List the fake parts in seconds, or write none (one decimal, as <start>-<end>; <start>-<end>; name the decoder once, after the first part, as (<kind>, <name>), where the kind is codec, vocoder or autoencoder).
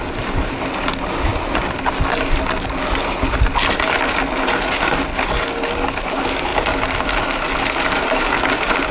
none